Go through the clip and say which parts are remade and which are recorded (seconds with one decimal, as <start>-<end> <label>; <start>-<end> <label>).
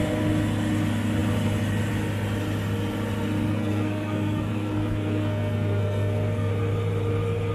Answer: 0.0-3.5 recorded; 3.5-6.5 remade; 6.5-7.5 recorded